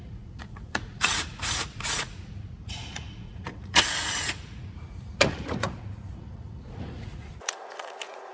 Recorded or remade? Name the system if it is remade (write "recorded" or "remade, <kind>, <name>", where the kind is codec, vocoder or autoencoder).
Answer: remade, vocoder, Vocos